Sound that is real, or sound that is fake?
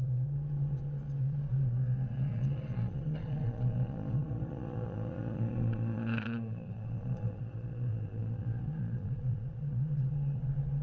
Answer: fake